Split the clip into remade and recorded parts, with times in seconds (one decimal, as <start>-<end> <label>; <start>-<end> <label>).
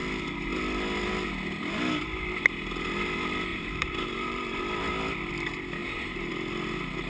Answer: 0.0-3.5 recorded; 3.5-4.6 remade; 4.6-5.8 recorded; 5.8-6.3 remade; 6.3-7.1 recorded